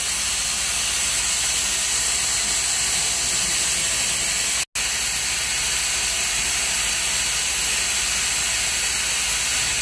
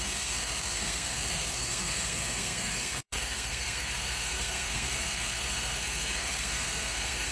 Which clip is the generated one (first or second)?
second